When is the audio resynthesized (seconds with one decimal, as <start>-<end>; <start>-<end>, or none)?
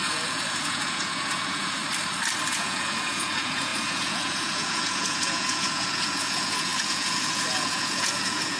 0.0-1.8; 2.5-8.6